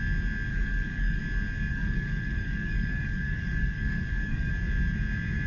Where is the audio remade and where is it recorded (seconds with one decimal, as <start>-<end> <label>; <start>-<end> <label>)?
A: 0.0-0.5 recorded; 0.5-1.2 remade; 1.2-1.7 recorded; 1.7-4.5 remade; 4.5-5.5 recorded

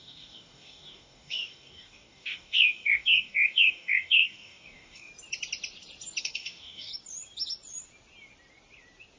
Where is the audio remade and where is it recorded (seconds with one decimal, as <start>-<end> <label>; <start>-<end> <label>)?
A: 0.0-5.1 remade; 5.1-6.2 recorded; 6.2-6.9 remade; 6.9-9.2 recorded

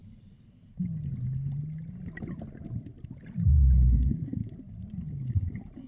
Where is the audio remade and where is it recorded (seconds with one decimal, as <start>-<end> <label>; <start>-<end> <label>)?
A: 0.0-3.5 recorded; 3.5-4.4 remade; 4.4-5.9 recorded

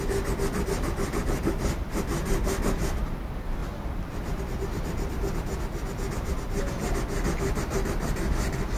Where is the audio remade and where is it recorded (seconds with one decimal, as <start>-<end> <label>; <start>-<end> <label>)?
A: 0.0-8.8 recorded

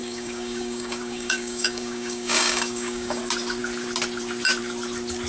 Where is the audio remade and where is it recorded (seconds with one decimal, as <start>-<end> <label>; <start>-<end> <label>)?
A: 0.0-3.2 remade; 3.2-5.3 recorded

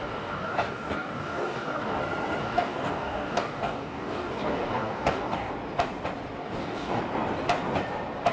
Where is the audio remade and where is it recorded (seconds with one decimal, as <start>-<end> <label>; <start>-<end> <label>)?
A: 0.0-2.0 remade; 2.0-2.4 recorded; 2.4-5.5 remade; 5.5-6.4 recorded; 6.4-7.0 remade; 7.0-8.3 recorded